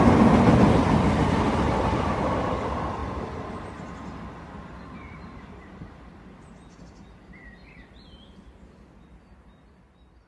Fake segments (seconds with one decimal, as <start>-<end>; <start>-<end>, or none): none